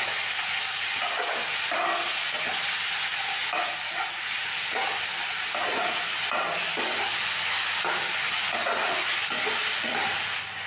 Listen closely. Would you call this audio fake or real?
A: real